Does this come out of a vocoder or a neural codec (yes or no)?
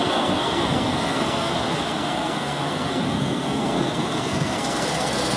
yes